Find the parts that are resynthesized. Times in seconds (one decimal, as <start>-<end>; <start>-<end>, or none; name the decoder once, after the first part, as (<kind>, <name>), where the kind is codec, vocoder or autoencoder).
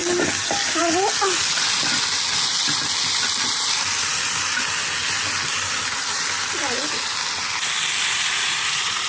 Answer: 8.0-9.1 (vocoder, Vocos)